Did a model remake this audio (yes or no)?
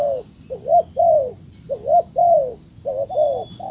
no